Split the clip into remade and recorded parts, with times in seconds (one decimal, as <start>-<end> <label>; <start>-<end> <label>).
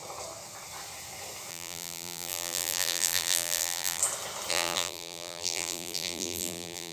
0.0-1.5 recorded; 1.5-4.0 remade; 4.0-4.5 recorded; 4.5-6.9 remade